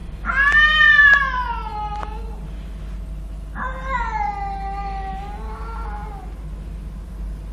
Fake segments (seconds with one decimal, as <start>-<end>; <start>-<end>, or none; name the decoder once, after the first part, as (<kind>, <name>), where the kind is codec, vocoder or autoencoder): none